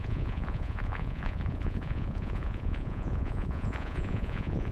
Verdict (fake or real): fake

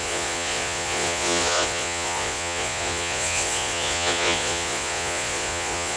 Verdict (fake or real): fake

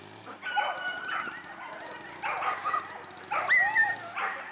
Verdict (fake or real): real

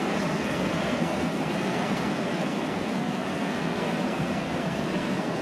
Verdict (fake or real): fake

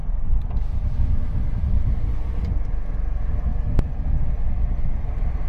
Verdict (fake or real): real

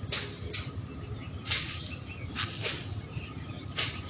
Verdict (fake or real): real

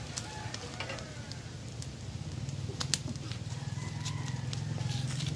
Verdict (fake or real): real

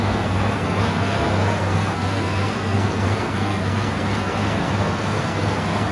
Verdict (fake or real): fake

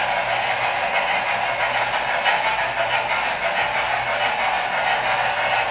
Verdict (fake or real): real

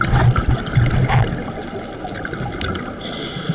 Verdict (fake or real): real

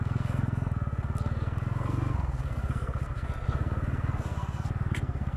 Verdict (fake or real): fake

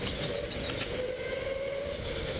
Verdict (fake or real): real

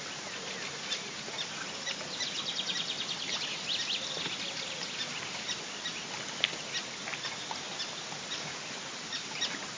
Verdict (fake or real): real